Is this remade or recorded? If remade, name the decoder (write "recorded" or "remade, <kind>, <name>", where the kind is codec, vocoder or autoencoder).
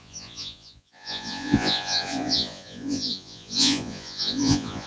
remade, vocoder, Vocos